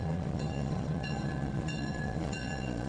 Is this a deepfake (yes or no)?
yes